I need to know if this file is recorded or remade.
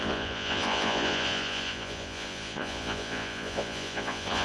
remade